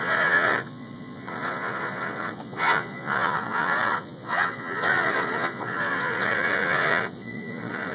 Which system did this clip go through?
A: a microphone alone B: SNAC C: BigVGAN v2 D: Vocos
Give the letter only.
D